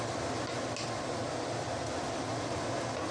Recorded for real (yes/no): yes